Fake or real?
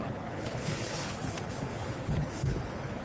fake